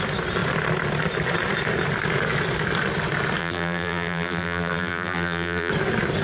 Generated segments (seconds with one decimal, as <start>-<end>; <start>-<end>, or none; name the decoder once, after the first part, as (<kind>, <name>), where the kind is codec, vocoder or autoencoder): 3.4-5.7 (vocoder, BigVGAN v2)